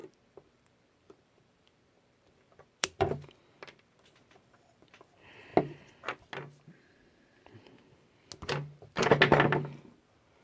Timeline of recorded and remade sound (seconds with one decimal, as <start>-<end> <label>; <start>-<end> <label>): 0.0-4.9 remade; 4.9-9.3 recorded; 9.3-10.0 remade; 10.0-10.4 recorded